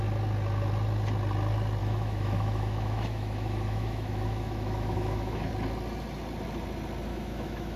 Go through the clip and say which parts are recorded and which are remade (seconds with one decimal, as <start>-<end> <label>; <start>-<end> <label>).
0.0-1.8 recorded; 1.8-5.5 remade; 5.5-7.1 recorded; 7.1-7.8 remade